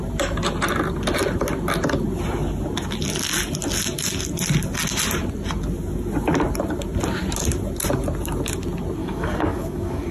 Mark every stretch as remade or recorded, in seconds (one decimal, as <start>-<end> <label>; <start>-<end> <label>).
0.0-9.0 recorded; 9.0-10.1 remade